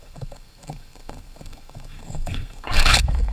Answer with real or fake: fake